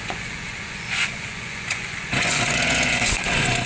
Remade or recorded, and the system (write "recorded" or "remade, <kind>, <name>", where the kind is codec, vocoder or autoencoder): remade, vocoder, Vocos